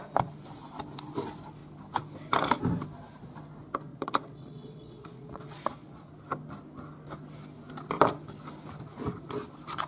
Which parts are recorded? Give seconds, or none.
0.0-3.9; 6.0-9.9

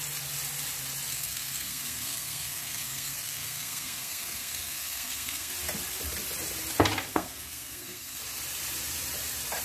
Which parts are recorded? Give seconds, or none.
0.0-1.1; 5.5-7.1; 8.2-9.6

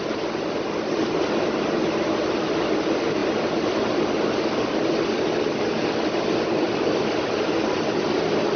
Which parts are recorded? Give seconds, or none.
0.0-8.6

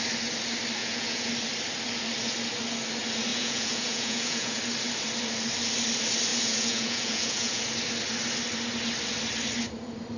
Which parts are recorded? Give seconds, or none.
0.0-0.8; 1.3-3.3; 4.6-6.3; 7.6-10.2

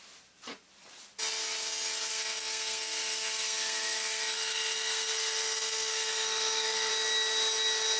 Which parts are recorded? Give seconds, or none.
0.0-2.1; 6.9-8.0